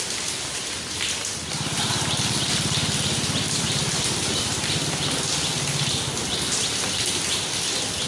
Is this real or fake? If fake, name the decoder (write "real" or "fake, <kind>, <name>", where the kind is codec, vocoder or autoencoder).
real